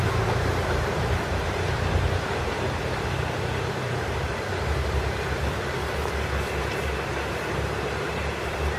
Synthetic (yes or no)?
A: yes